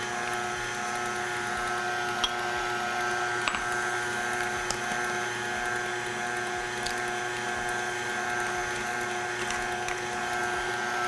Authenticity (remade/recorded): recorded